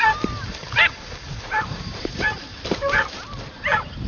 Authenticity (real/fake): fake